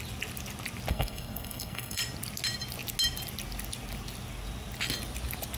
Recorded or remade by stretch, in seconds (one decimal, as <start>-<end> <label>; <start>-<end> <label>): 0.0-0.9 recorded; 0.9-2.0 remade; 2.0-5.6 recorded